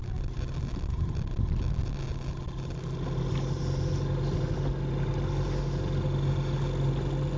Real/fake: real